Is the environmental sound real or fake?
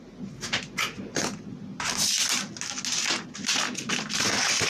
real